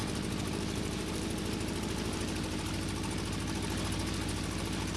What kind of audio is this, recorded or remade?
recorded